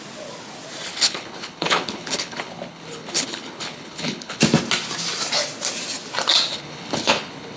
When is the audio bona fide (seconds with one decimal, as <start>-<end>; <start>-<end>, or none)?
0.0-0.9; 4.4-6.5